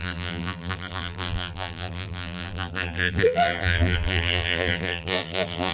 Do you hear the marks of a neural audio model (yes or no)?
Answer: yes